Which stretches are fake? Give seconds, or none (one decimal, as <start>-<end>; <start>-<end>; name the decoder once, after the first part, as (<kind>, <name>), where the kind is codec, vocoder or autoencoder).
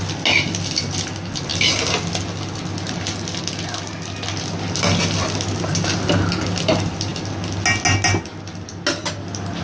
none